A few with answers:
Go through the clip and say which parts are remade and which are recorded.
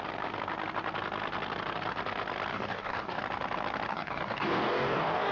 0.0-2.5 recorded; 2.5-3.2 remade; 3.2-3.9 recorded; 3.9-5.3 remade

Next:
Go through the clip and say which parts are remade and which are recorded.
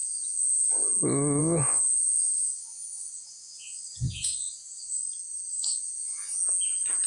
0.0-0.9 remade; 0.9-1.4 recorded; 1.4-5.0 remade; 5.0-5.5 recorded; 5.5-6.4 remade; 6.4-7.1 recorded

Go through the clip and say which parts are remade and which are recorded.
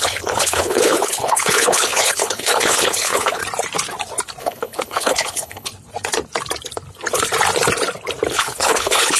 0.0-3.4 remade; 3.4-4.4 recorded; 4.4-5.7 remade; 5.7-8.3 recorded; 8.3-9.2 remade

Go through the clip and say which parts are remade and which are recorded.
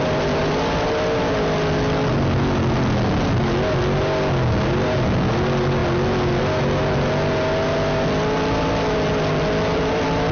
0.0-10.3 recorded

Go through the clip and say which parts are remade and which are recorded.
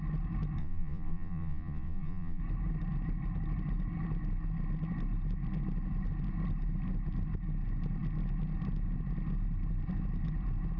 0.0-0.6 recorded; 0.6-2.4 remade; 2.4-10.8 recorded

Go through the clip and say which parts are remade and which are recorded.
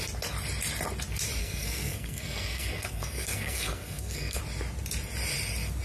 0.0-1.4 recorded; 1.4-4.4 remade; 4.4-5.8 recorded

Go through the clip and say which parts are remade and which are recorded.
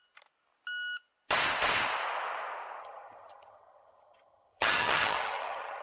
0.0-2.8 recorded; 2.8-5.8 remade